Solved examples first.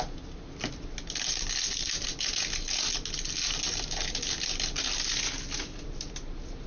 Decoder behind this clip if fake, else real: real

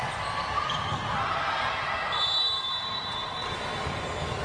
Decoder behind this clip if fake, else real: real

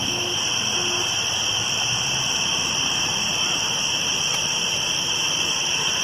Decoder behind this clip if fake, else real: real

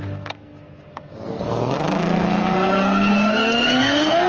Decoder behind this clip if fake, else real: fake, codec, SNAC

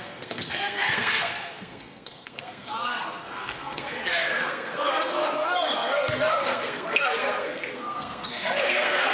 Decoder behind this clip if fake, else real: fake, codec, SNAC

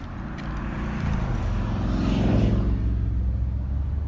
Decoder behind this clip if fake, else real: real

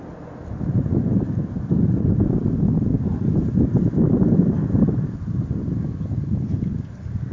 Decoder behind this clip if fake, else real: real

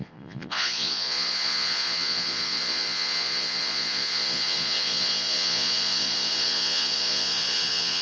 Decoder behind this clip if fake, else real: fake, vocoder, Vocos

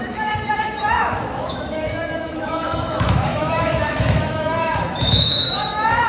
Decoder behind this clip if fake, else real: fake, autoencoder, DAC-VAE